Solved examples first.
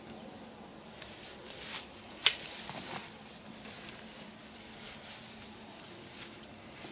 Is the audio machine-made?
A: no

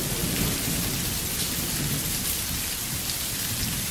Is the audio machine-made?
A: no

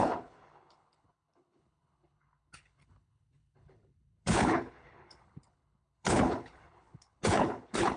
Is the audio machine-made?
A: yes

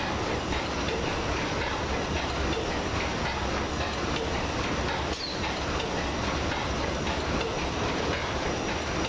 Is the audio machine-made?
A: no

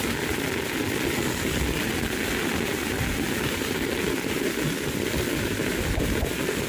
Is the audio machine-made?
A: no